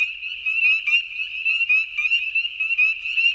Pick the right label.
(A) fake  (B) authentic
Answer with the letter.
B